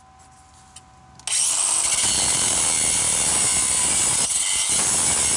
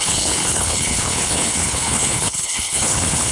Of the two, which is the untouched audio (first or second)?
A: first